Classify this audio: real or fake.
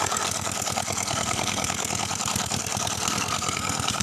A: fake